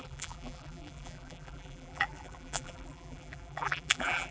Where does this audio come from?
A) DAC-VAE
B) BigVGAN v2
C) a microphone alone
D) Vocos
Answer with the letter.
B